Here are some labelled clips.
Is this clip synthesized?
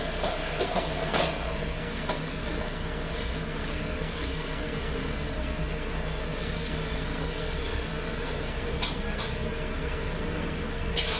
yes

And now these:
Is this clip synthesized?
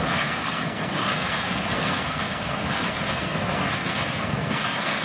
yes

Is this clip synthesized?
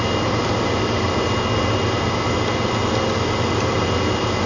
no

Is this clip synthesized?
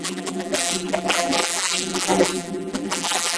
yes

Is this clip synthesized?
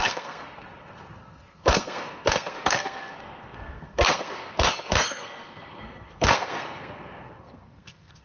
yes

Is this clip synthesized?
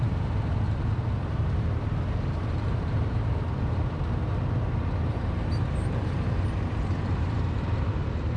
yes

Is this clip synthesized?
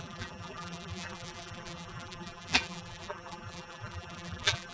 yes